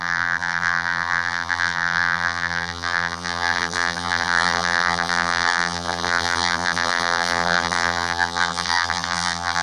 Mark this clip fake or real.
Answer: fake